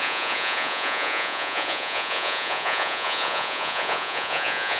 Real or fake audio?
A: fake